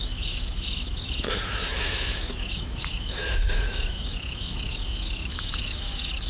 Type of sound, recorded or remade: remade